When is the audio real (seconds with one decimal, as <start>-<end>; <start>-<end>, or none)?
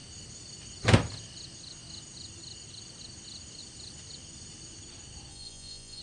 0.0-5.3